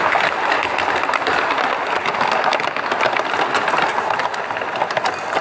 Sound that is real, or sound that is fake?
real